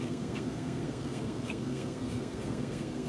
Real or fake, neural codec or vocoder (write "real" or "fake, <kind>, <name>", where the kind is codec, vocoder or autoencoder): fake, codec, SNAC